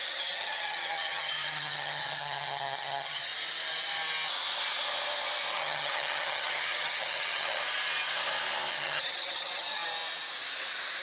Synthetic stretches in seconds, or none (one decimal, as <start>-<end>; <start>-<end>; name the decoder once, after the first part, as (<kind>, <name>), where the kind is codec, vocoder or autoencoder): 0.0-3.3 (vocoder, HiFi-GAN); 5.5-7.6; 8.7-9.8